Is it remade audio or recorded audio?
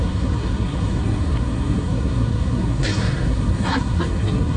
remade